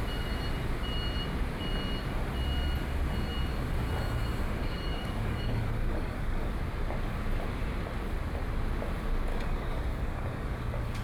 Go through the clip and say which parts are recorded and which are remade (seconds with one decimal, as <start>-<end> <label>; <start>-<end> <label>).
0.0-4.6 recorded; 4.6-6.5 remade; 6.5-9.3 recorded; 9.3-11.0 remade